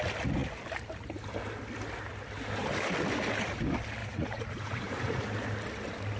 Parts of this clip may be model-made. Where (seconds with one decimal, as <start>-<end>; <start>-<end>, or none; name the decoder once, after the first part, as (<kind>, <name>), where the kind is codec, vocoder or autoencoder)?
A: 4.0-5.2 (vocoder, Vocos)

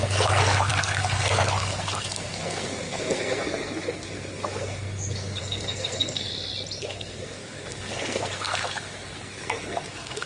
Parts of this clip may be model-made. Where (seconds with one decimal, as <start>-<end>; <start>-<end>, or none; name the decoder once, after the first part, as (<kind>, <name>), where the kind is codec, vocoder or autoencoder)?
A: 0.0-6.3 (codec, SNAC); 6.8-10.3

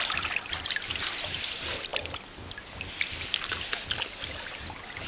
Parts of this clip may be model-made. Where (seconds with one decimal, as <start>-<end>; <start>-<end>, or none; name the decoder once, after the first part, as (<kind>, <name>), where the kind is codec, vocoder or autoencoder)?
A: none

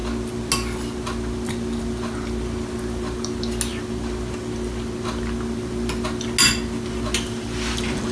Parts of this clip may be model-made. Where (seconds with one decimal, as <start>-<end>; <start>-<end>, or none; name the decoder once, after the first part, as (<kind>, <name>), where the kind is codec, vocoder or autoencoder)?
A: none

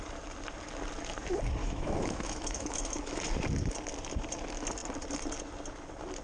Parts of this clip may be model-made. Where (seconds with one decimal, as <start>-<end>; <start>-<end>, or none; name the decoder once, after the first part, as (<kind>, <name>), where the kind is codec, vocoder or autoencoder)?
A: 1.6-3.2 (autoencoder, DAC-VAE)

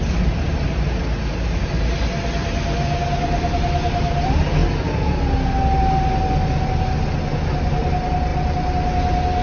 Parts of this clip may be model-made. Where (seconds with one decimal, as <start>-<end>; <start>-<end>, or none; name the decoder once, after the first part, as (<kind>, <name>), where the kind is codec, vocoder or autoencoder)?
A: none

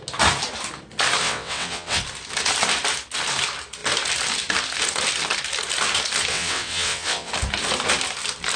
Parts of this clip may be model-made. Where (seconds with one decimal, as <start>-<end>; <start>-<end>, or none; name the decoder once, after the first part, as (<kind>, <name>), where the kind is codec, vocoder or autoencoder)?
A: 1.2-2.0 (vocoder, WaveNeXt); 6.3-7.3